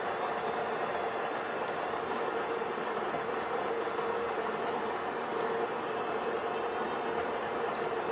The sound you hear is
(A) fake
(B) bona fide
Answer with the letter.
B